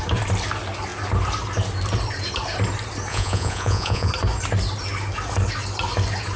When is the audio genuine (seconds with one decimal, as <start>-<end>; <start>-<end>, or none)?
0.0-3.1; 4.1-6.4